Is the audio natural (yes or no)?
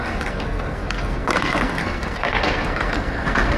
no